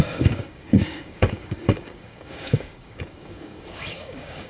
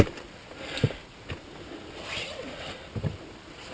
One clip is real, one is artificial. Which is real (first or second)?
second